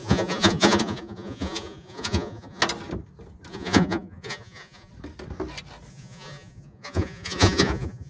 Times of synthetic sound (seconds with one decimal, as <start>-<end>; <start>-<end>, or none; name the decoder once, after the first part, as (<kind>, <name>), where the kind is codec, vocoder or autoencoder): 0.0-2.6 (vocoder, Vocos); 3.5-4.9; 5.9-8.1